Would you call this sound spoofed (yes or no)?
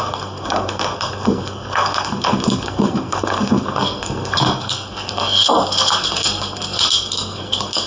yes